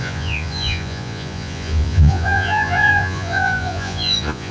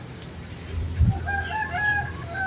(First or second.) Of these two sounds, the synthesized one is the first